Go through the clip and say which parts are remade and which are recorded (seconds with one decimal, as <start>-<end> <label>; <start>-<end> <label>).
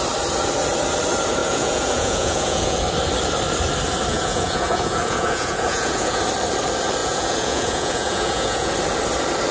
0.0-1.4 recorded; 1.4-2.8 remade; 2.8-4.1 recorded; 4.1-6.2 remade; 6.2-7.0 recorded; 7.0-8.7 remade; 8.7-9.5 recorded